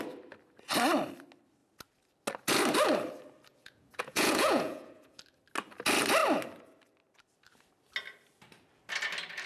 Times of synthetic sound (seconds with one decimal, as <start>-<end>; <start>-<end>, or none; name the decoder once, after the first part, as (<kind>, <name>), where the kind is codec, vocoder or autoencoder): 3.5-5.2 (vocoder, Vocos)